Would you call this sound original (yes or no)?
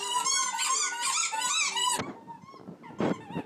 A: yes